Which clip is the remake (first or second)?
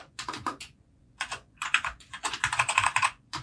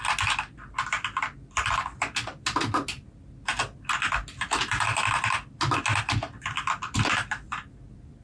first